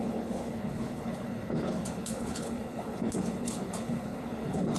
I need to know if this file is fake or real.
fake